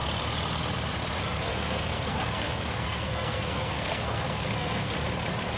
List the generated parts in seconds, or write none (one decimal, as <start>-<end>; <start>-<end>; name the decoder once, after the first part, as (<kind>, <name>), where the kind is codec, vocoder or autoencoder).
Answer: 1.5-4.9 (codec, SNAC)